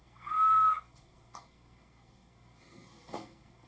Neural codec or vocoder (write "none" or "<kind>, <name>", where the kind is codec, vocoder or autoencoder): codec, SNAC